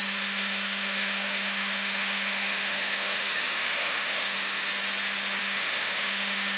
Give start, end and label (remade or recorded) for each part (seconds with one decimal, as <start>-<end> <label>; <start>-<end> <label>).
0.0-4.7 remade; 4.7-5.4 recorded; 5.4-6.6 remade